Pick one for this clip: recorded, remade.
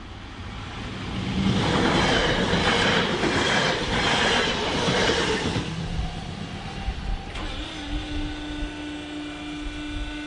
recorded